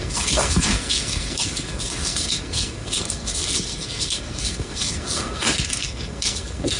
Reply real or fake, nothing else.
fake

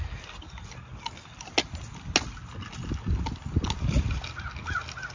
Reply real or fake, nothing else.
real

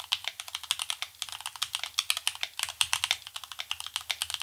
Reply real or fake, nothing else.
real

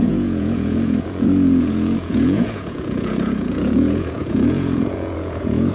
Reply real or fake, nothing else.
fake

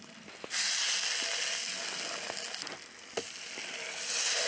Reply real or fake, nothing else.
real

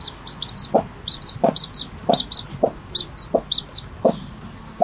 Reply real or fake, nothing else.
real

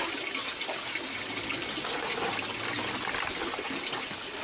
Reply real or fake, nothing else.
real